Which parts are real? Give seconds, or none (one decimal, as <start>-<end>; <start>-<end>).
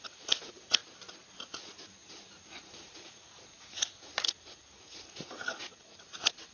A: 0.8-1.5